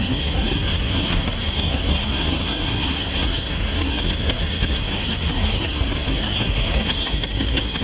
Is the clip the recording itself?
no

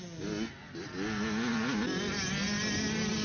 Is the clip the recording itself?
yes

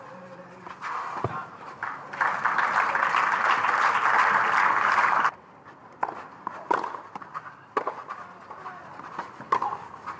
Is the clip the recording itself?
yes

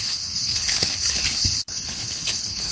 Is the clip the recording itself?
no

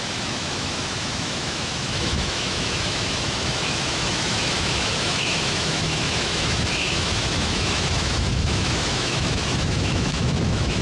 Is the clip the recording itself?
no